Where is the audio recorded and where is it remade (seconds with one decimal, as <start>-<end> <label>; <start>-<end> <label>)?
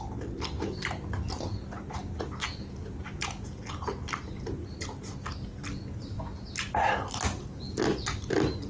0.0-8.7 recorded